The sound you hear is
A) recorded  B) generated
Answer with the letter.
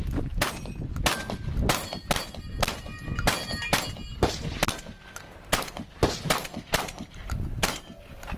A